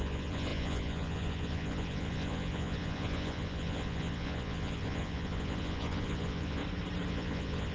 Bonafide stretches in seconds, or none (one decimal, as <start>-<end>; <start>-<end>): 6.6-7.1